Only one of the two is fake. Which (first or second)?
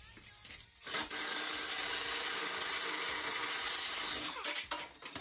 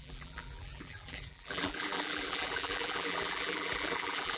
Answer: second